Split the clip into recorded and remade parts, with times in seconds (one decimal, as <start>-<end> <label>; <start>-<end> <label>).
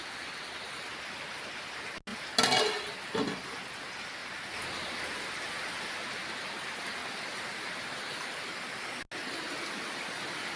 0.0-10.6 recorded